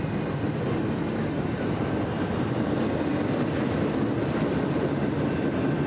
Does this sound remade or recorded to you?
recorded